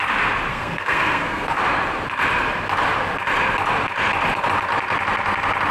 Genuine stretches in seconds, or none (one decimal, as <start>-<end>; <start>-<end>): 0.0-0.5; 1.6-5.7